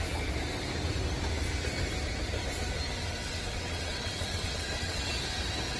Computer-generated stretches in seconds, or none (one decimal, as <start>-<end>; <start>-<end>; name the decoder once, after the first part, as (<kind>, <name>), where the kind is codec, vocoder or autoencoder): 3.2-5.1 (vocoder, WaveNeXt)